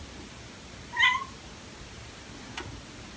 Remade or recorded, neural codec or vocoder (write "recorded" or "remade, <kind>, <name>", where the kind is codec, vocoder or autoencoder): recorded